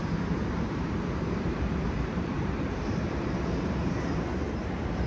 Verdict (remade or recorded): remade